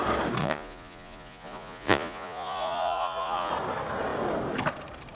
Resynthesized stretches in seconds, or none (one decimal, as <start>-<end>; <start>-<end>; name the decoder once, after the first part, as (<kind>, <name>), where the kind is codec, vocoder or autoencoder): 0.4-3.5 (vocoder, Vocos)